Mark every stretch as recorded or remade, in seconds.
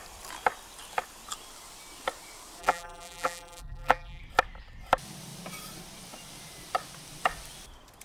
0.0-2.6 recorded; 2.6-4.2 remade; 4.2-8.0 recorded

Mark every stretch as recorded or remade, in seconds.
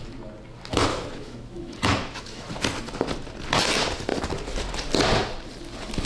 0.0-0.9 recorded; 0.9-2.5 remade; 2.5-6.1 recorded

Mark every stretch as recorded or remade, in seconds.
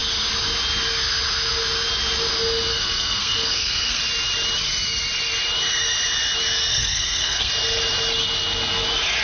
0.0-2.7 recorded; 2.7-4.0 remade; 4.0-6.7 recorded; 6.7-7.5 remade; 7.5-9.2 recorded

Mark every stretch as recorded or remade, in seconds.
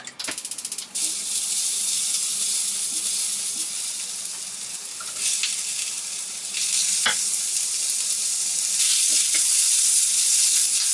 0.0-10.9 recorded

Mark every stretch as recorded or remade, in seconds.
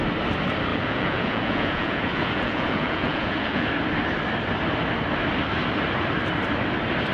0.0-0.7 recorded; 0.7-3.7 remade; 3.7-7.1 recorded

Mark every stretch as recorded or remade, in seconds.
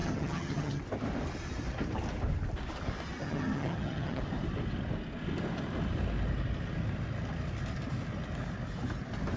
0.0-0.8 remade; 0.8-3.2 recorded; 3.2-4.2 remade; 4.2-9.4 recorded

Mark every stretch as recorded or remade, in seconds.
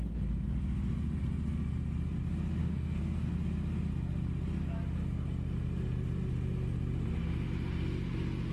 0.0-2.6 recorded; 2.6-3.3 remade; 3.3-8.5 recorded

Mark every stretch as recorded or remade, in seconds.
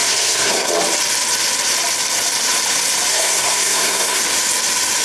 0.0-0.7 remade; 0.7-3.1 recorded; 3.1-4.2 remade; 4.2-5.0 recorded